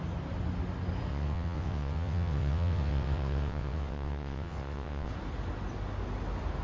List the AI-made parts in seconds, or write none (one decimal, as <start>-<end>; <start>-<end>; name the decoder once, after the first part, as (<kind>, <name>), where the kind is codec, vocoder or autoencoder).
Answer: 1.1-5.1 (vocoder, WaveNeXt)